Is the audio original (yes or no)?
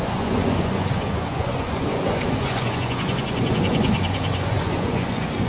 no